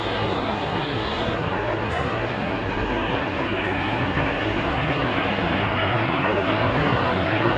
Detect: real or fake fake